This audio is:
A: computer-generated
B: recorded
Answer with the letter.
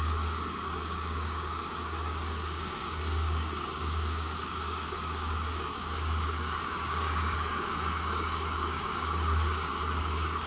A